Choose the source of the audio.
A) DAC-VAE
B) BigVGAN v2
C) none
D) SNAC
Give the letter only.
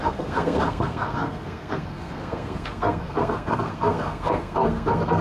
D